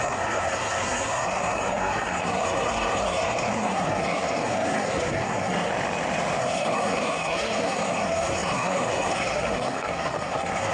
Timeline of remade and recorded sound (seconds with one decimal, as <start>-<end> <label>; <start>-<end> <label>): 0.0-5.7 remade; 5.7-6.4 recorded; 6.4-10.7 remade